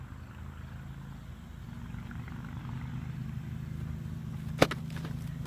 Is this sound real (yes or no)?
yes